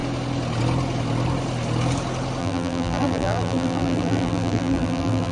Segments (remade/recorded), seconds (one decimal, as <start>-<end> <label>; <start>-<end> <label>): 0.0-2.4 recorded; 2.4-5.3 remade